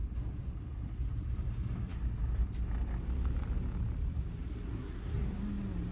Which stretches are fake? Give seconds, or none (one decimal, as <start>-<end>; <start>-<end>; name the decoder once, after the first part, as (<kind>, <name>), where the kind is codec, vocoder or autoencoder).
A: 4.7-5.4 (codec, SNAC)